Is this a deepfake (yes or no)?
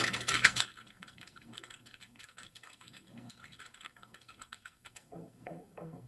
yes